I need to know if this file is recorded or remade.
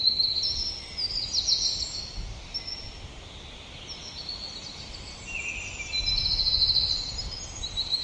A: recorded